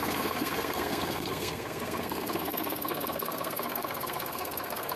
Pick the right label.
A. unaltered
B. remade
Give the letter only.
B